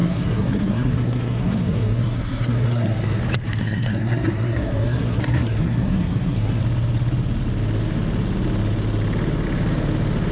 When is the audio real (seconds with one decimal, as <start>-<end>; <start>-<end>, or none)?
3.2-3.6; 6.6-10.3